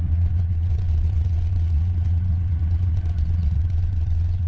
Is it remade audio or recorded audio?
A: remade